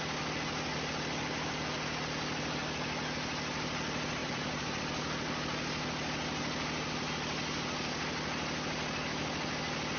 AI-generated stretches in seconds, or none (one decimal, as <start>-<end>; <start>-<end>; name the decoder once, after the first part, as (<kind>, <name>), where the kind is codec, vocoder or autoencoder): 4.2-4.8 (vocoder, BigVGAN v2)